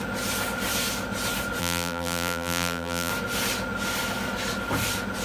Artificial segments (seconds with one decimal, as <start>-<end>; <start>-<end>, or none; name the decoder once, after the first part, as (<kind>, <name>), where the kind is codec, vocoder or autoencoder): 1.6-3.1 (vocoder, BigVGAN v2)